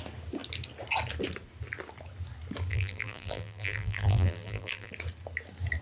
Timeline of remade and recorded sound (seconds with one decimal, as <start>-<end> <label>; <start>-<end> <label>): 0.0-2.7 recorded; 2.7-4.9 remade; 4.9-5.8 recorded